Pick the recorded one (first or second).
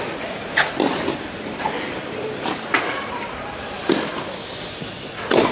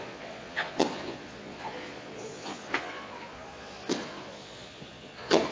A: first